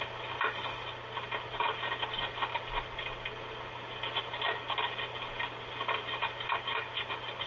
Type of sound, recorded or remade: recorded